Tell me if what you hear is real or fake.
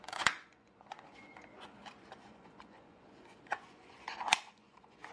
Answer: fake